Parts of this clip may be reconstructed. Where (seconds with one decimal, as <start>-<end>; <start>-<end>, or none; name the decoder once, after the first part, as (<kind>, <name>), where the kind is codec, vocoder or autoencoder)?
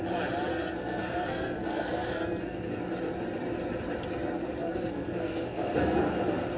0.5-2.8 (codec, SNAC); 4.6-6.0